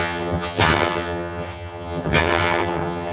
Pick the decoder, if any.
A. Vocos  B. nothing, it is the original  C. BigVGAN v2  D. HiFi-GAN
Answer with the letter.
D